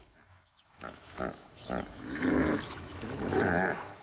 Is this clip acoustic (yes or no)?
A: no